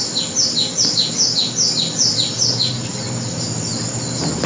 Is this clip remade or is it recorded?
recorded